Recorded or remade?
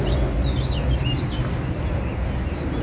recorded